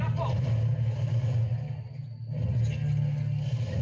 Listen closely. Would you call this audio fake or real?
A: real